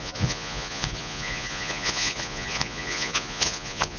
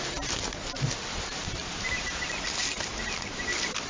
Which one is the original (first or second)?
second